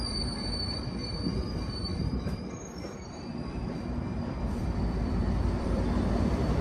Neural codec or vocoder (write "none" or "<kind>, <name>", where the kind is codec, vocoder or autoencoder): vocoder, BigVGAN v2